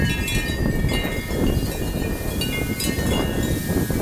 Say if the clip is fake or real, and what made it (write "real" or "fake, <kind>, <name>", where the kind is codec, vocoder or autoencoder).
fake, vocoder, BigVGAN v2